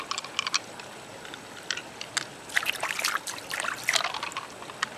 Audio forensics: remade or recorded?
recorded